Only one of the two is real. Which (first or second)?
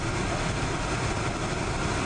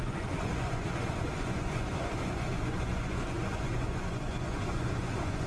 first